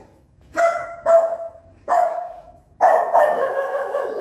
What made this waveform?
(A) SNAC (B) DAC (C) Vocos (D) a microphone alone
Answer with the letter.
B